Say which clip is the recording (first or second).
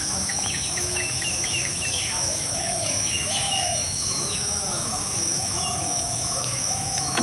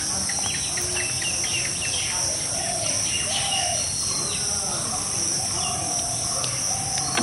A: second